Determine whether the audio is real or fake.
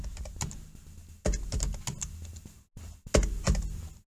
real